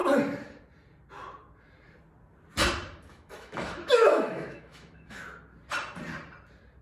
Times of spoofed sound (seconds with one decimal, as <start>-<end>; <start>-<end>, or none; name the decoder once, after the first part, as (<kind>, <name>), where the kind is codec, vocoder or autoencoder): 3.1-5.2 (autoencoder, DAC-VAE)